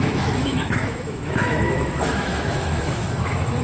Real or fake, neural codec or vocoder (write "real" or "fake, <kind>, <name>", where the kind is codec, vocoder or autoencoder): fake, autoencoder, DAC-VAE